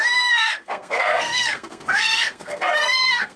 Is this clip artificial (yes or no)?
yes